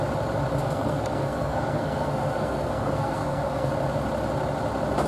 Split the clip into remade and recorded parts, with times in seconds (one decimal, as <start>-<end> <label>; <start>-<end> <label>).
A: 0.0-0.6 recorded; 0.6-3.7 remade; 3.7-5.1 recorded